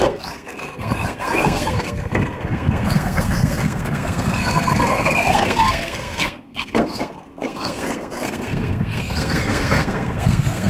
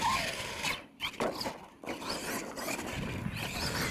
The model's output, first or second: first